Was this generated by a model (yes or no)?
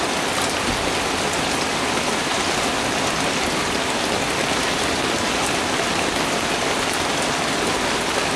no